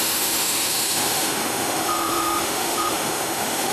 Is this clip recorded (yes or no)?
no